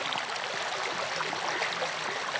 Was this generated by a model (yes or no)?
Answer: no